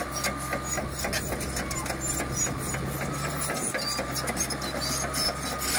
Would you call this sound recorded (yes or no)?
yes